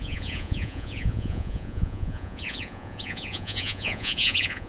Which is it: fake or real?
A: fake